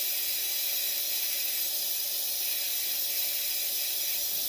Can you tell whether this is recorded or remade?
recorded